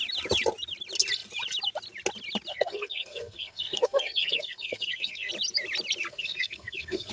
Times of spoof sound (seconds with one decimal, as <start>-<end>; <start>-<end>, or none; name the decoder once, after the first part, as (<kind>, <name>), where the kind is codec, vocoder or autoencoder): 2.5-5.3 (codec, SNAC); 6.1-7.1

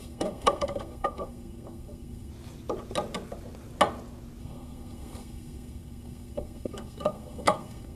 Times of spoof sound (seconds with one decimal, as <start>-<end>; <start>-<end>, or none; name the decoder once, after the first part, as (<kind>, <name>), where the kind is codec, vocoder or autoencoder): 0.0-2.3 (codec, SNAC); 4.4-8.0

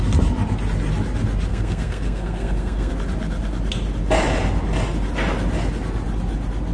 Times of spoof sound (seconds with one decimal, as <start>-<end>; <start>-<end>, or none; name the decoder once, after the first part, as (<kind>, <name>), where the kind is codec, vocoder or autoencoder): 1.5-2.9 (codec, SNAC)

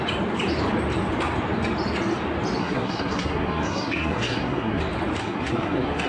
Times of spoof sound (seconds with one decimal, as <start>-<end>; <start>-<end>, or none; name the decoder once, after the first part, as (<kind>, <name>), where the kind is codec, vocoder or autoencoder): 2.6-4.8 (codec, SNAC); 5.2-6.1

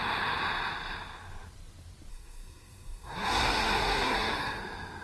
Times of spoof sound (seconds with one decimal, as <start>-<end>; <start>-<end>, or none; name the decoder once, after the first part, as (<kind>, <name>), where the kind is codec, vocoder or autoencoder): 2.1-4.6 (codec, SNAC)

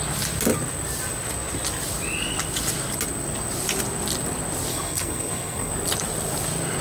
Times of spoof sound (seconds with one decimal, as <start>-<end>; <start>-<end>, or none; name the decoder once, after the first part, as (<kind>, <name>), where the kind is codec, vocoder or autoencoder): 4.7-5.7 (codec, SNAC)